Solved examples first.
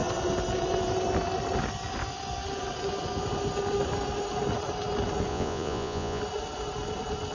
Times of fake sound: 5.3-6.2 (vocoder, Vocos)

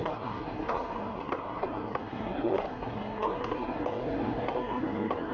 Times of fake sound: 0.0-5.3 (codec, SNAC)

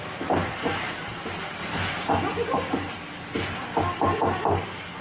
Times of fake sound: 0.4-1.2 (vocoder, BigVGAN v2); 1.6-2.1

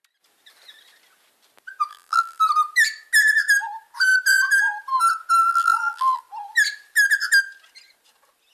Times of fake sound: 1.9-2.4 (vocoder, BigVGAN v2); 5.4-6.2

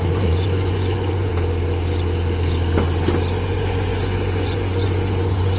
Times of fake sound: 0.0-1.3 (vocoder, Vocos); 3.4-5.6

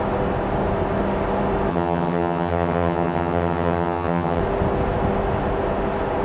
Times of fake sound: 1.7-4.4 (vocoder, HiFi-GAN)

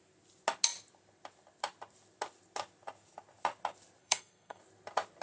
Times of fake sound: 4.0-4.6 (codec, SNAC)

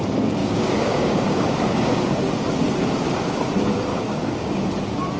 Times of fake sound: 0.4-2.2 (codec, DAC); 3.9-4.7